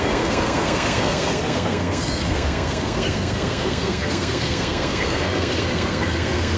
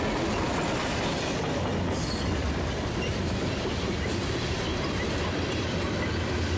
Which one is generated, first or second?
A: first